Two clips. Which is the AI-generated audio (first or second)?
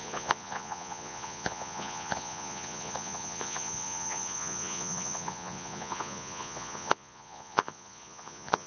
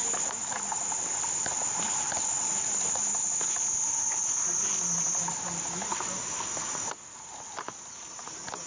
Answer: first